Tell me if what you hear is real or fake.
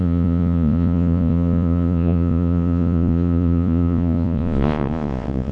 fake